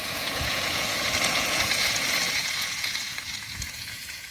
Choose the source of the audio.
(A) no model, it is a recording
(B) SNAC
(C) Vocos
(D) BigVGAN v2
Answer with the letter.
C